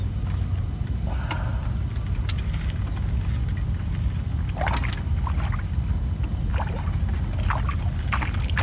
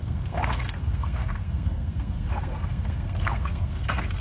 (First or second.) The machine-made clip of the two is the second